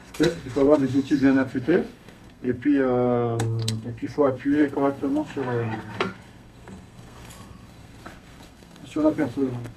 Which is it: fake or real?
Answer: fake